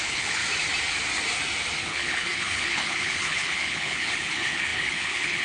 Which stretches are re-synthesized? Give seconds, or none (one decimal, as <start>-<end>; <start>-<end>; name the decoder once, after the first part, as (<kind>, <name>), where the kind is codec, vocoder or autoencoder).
0.0-0.4 (codec, HILCodec); 1.8-5.4